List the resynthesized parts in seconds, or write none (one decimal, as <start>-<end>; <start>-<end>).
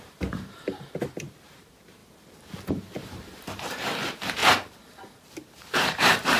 0.0-2.0; 2.7-4.4; 5.3-6.4